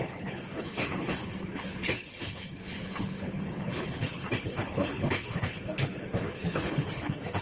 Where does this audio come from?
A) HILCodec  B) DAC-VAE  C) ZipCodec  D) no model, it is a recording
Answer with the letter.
A